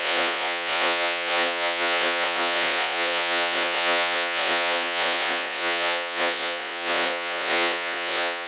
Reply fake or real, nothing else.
fake